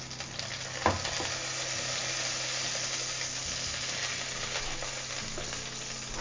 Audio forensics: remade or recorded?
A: recorded